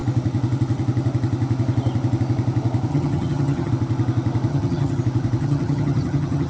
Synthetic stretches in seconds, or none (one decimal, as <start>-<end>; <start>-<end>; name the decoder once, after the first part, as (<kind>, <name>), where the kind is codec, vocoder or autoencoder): 2.9-3.7 (vocoder, HiFi-GAN); 4.5-5.0; 5.4-6.5